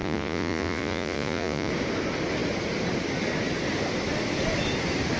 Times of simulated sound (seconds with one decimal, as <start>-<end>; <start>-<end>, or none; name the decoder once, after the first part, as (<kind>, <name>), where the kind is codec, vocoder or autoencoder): 0.0-1.7 (vocoder, Vocos)